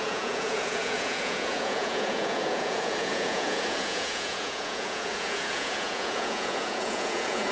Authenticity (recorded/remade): remade